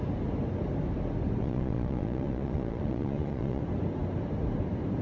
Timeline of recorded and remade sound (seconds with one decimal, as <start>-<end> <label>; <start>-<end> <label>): 0.0-1.4 recorded; 1.4-3.6 remade; 3.6-5.0 recorded